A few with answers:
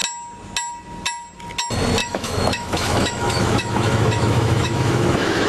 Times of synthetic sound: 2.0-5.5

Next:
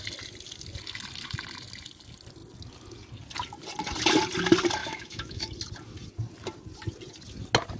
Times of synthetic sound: 4.8-5.5

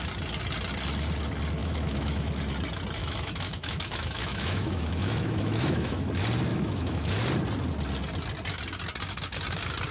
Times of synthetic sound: 1.6-2.4; 3.0-6.1; 6.5-7.1